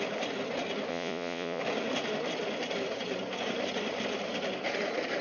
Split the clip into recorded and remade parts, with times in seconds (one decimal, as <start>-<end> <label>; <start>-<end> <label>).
0.0-0.9 recorded; 0.9-1.6 remade; 1.6-5.2 recorded